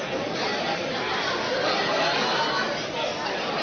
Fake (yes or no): no